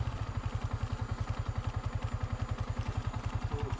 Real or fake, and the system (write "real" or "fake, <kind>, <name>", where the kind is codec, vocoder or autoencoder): real